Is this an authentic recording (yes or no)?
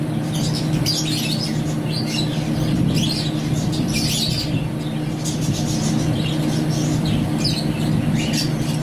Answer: yes